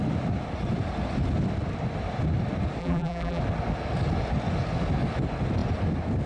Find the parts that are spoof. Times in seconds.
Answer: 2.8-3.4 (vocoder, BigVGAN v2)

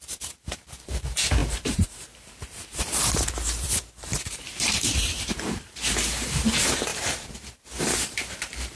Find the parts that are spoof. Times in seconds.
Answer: 0.0-6.9 (vocoder, BigVGAN v2); 7.8-8.8

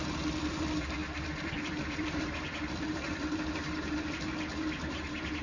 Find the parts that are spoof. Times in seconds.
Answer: 0.0-5.4 (vocoder, BigVGAN v2)

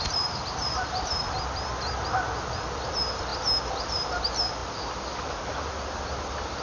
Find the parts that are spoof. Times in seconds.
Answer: 0.0-3.3 (vocoder, BigVGAN v2); 3.9-4.6

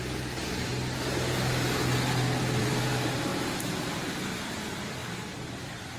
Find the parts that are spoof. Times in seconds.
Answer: 0.0-0.7 (vocoder, BigVGAN v2); 2.6-6.0

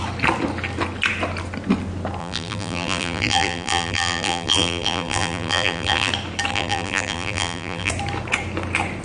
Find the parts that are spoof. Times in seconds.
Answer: 2.2-6.1 (vocoder, BigVGAN v2); 6.5-7.9

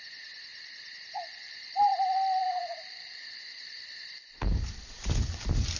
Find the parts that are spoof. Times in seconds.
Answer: none

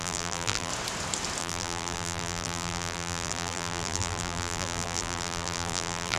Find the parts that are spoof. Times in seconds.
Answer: 0.0-0.7 (vocoder, BigVGAN v2); 1.4-6.2